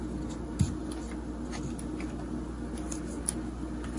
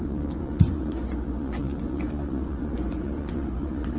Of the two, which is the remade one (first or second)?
second